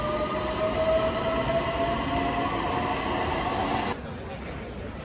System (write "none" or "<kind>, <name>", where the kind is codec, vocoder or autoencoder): none